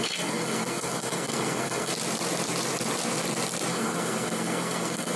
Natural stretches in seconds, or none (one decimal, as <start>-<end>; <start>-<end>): 1.9-3.7

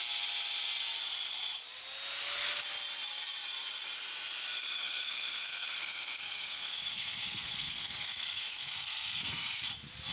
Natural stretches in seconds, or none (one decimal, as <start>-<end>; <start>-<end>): 0.0-4.6; 9.7-10.1